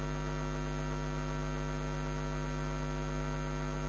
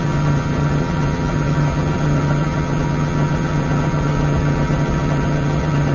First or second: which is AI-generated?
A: second